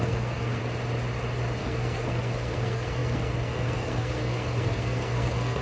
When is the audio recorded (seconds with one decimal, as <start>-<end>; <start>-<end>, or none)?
0.6-1.6